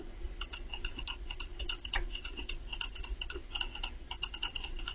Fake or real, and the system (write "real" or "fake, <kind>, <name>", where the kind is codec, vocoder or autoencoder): fake, vocoder, Vocos